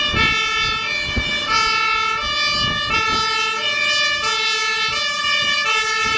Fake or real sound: real